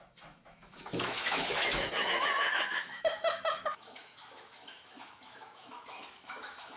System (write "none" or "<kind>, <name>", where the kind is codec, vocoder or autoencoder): autoencoder, DAC-VAE